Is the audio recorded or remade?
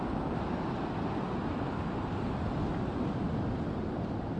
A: recorded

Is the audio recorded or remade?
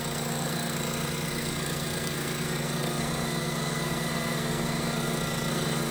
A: remade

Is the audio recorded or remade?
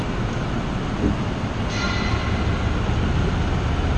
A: recorded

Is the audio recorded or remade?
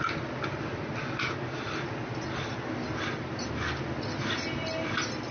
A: recorded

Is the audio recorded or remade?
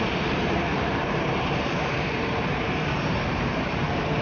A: remade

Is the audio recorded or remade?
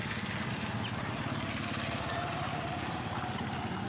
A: recorded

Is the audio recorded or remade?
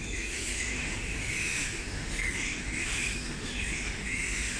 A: remade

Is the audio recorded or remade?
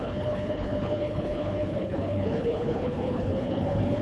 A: remade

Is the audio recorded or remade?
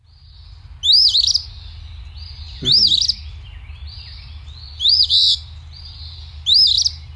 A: recorded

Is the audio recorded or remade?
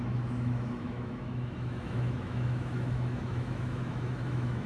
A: remade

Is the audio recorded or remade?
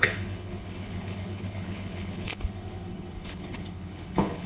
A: remade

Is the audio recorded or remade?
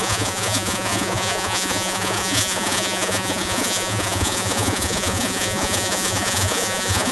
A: remade